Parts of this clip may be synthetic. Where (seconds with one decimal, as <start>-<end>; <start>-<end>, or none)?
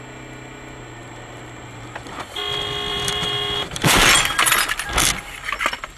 1.0-2.4; 2.9-4.0